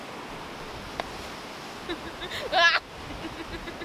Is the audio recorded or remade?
recorded